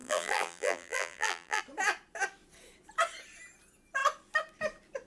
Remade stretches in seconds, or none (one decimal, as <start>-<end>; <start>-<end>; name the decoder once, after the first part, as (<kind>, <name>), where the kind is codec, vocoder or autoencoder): 0.0-1.6 (vocoder, BigVGAN v2)